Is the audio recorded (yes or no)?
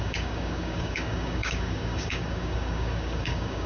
no